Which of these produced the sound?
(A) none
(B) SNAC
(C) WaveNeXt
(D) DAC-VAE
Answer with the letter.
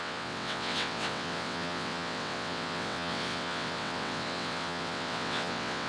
C